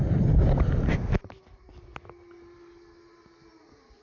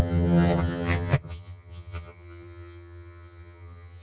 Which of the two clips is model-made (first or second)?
second